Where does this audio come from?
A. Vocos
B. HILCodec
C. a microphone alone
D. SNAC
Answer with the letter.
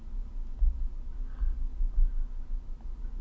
C